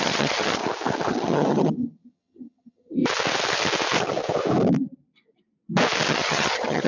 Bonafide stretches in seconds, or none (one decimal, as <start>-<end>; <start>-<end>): 0.6-1.1; 3.0-6.1